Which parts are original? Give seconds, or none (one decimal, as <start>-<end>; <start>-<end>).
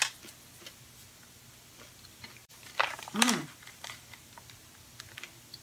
0.0-2.4; 4.4-5.6